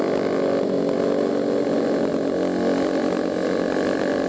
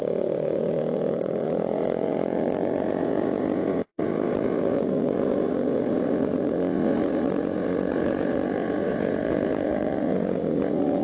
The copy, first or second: second